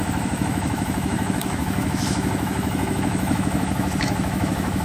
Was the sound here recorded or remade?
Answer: remade